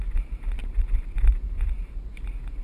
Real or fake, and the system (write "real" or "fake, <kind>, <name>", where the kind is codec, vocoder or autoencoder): fake, vocoder, BigVGAN v2